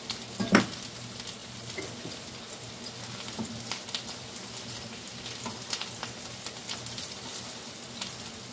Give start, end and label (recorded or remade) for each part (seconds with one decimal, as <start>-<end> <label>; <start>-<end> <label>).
0.0-8.5 recorded